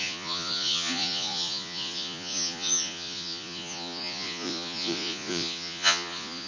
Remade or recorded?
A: remade